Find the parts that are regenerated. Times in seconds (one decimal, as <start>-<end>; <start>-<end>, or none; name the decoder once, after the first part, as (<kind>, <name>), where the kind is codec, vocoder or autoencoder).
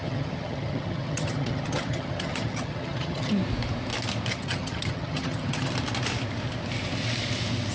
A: 0.0-3.3 (vocoder, HiFi-GAN); 4.3-5.7